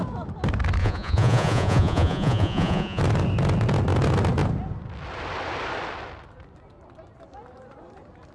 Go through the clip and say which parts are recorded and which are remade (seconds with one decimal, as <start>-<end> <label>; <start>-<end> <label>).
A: 0.0-0.8 recorded; 0.8-3.0 remade; 3.0-8.3 recorded